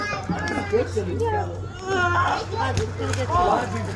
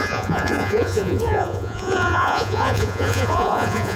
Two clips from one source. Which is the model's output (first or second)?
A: second